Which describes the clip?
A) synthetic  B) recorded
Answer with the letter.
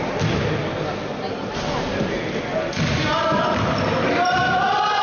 B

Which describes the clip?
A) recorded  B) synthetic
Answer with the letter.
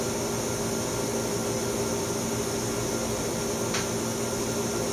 A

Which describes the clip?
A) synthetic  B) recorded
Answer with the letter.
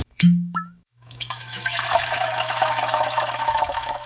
A